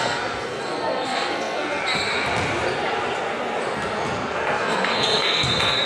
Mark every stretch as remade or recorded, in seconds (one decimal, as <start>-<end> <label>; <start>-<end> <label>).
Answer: 0.0-1.8 remade; 1.8-4.3 recorded; 4.3-5.9 remade

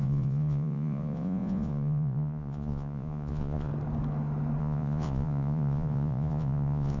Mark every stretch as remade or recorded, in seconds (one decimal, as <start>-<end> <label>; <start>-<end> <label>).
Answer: 0.0-3.7 remade; 3.7-4.6 recorded; 4.6-7.0 remade